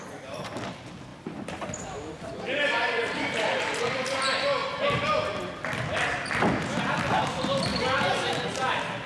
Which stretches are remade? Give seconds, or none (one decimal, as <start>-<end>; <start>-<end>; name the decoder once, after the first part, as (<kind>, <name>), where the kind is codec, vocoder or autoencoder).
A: 1.1-3.8 (vocoder, BigVGAN v2); 7.7-9.1